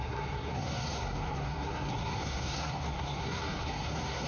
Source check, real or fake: fake